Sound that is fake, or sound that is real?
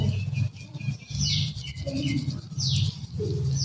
real